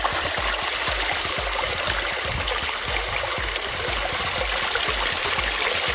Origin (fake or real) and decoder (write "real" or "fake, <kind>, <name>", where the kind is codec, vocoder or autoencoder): real